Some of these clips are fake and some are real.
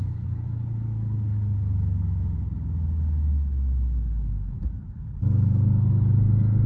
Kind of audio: fake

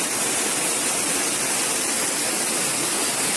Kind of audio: real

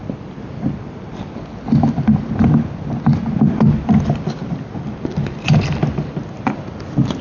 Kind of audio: real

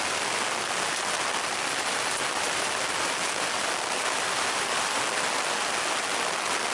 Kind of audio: real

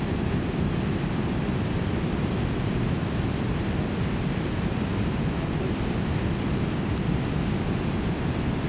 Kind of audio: real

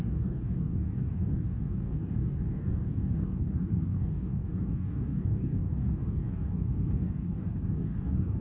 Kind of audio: fake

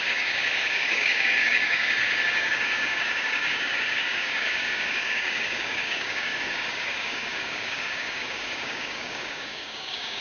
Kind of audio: fake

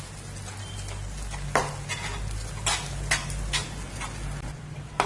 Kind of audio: real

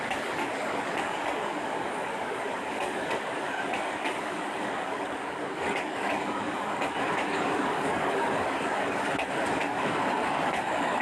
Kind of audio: fake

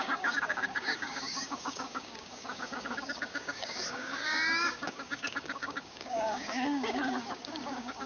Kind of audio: fake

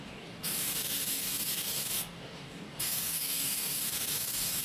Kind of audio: fake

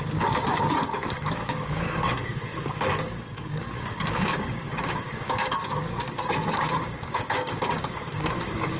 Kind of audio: fake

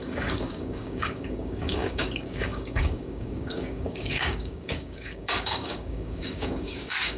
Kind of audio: fake